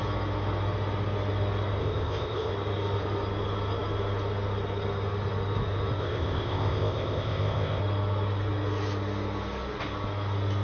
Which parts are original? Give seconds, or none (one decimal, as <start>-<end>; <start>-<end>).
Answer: 0.0-1.8; 2.5-6.0; 7.8-10.6

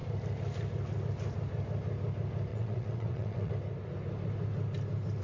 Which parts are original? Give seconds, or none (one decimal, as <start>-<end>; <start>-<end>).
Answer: 0.0-2.5; 3.5-5.2

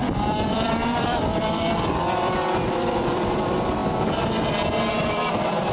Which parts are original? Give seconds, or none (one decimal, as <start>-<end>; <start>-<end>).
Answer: 3.8-4.9

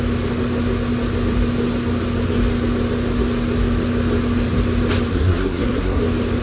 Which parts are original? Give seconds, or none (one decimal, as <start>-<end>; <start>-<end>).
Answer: 0.0-5.1; 6.0-6.4

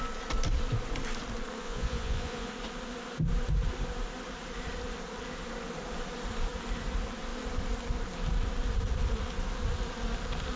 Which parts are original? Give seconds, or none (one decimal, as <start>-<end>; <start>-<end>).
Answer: 0.0-1.6; 2.5-10.6

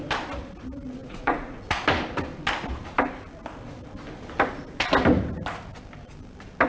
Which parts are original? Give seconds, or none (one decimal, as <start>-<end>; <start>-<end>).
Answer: 0.0-1.0; 1.6-6.7

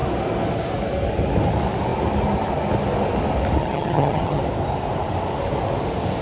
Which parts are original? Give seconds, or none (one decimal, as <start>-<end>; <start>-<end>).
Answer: 0.0-3.6; 4.4-6.2

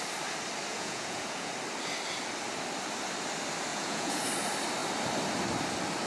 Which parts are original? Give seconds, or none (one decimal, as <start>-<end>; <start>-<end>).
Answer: 0.0-0.7; 1.5-3.7; 4.3-6.1